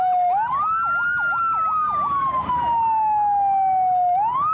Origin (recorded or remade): recorded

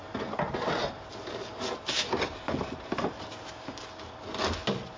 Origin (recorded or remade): recorded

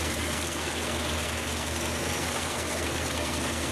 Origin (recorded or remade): remade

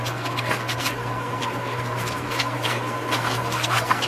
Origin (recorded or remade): remade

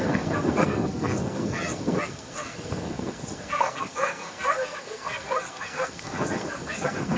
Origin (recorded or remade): remade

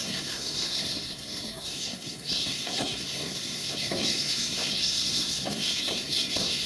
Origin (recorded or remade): remade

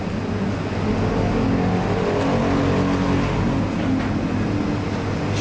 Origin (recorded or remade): recorded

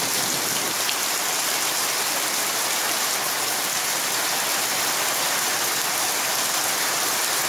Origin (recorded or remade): recorded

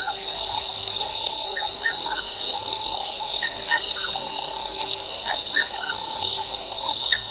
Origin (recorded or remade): remade